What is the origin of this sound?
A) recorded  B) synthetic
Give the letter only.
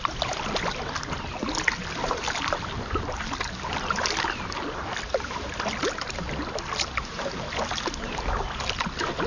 A